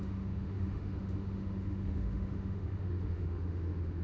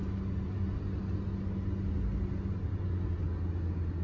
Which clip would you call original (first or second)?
second